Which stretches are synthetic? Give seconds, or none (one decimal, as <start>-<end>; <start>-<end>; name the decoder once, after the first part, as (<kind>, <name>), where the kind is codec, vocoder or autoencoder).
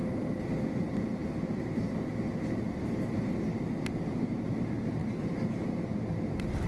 0.0-0.5 (vocoder, BigVGAN v2); 5.0-6.2